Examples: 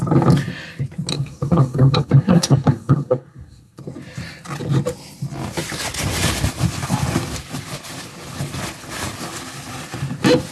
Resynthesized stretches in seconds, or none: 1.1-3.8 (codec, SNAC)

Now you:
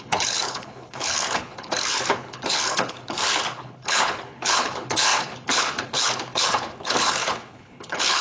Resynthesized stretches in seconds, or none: 0.0-8.2 (codec, HILCodec)

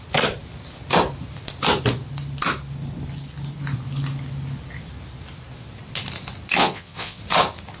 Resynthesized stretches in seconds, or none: 6.6-7.2 (vocoder, Vocos)

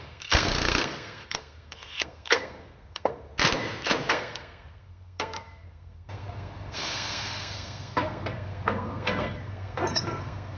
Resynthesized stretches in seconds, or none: 0.0-3.3 (codec, SNAC); 4.1-10.6

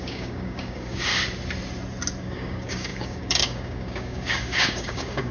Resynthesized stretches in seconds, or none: 0.0-1.1 (codec, DAC); 2.2-5.3